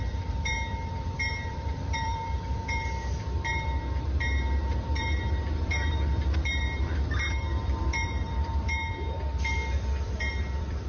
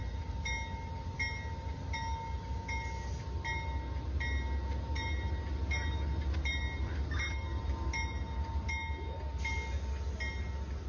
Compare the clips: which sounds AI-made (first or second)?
first